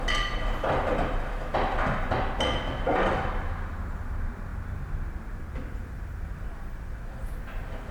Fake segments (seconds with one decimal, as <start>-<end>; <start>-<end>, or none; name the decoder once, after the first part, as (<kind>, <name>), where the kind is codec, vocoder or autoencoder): none